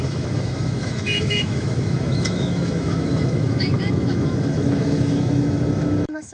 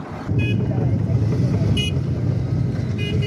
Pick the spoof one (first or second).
first